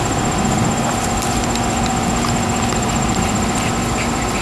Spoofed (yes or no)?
no